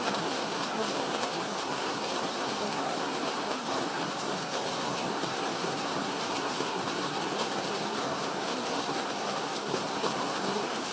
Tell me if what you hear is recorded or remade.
remade